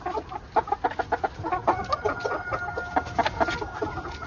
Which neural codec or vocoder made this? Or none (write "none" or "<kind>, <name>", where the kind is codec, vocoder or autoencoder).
none